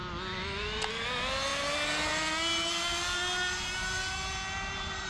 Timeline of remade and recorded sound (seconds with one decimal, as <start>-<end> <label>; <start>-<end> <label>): 0.0-5.1 recorded